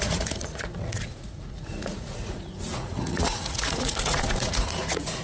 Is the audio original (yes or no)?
no